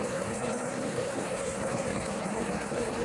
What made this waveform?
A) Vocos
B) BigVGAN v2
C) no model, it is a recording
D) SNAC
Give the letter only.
D